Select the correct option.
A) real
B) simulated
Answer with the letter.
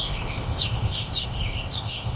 B